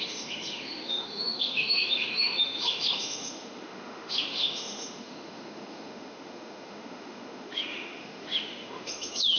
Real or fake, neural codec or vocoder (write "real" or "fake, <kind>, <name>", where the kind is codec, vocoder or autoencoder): fake, autoencoder, DAC-VAE